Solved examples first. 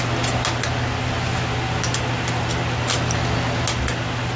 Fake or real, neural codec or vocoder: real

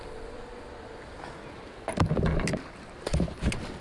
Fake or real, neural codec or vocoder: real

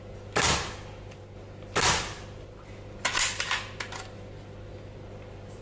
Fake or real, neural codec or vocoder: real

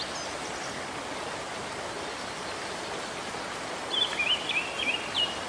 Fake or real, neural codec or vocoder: real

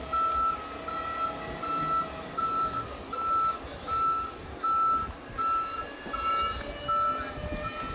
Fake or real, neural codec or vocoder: real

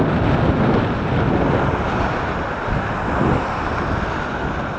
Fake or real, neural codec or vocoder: real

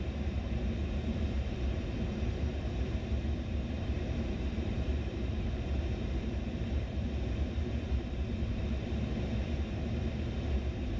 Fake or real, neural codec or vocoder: fake, vocoder, BigVGAN v2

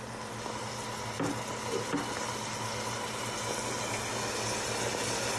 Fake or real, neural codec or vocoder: real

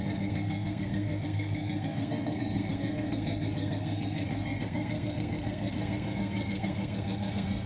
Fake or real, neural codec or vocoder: fake, codec, SNAC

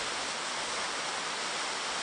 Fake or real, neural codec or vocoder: real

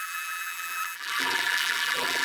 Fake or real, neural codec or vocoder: fake, vocoder, BigVGAN v2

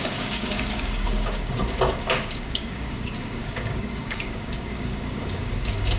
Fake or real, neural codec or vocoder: fake, codec, DAC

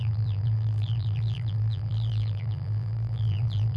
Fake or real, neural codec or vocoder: fake, vocoder, BigVGAN v2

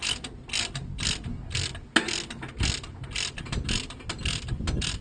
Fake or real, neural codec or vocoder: real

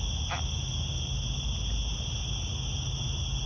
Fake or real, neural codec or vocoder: real